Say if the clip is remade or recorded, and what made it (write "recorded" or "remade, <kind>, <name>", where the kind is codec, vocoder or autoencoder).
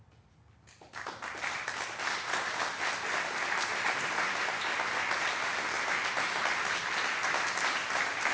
recorded